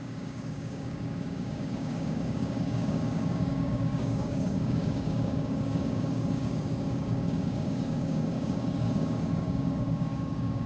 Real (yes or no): no